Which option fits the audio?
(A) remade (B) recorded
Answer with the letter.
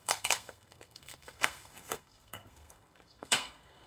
A